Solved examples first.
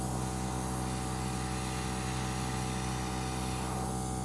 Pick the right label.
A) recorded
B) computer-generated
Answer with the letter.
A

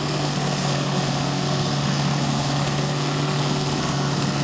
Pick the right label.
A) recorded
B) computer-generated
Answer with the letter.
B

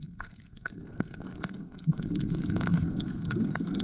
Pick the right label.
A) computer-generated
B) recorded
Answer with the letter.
A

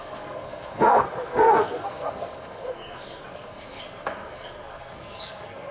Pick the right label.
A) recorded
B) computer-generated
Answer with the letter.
B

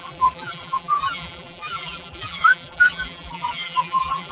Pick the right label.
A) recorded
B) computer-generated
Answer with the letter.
B